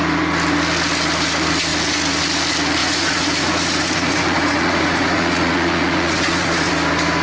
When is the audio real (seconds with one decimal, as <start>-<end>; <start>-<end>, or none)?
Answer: 0.0-2.8; 6.7-7.2